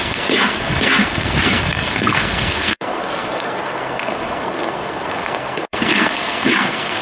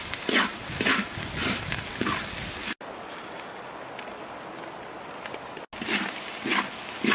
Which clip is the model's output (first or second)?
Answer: first